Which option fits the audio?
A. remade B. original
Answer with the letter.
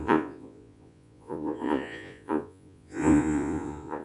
A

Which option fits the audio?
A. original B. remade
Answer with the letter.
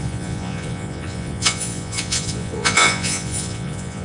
B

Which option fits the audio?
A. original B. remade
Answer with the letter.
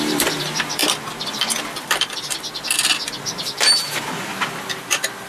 B